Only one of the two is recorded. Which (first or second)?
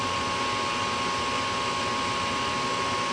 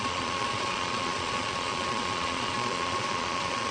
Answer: first